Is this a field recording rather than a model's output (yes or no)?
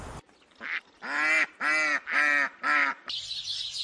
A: yes